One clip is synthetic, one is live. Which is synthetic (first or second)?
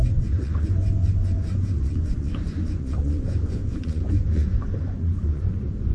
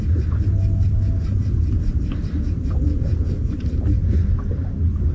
first